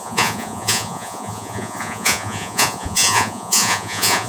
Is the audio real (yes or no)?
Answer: no